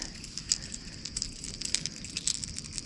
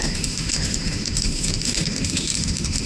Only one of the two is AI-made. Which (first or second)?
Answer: second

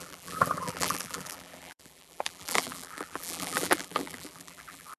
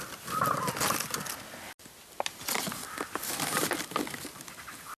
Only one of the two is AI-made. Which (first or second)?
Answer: first